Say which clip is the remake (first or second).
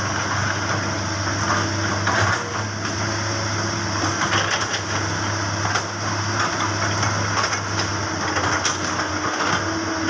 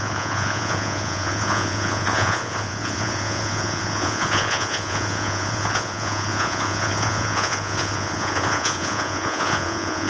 second